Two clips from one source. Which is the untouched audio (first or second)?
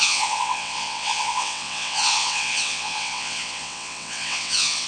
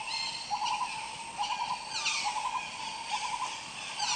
second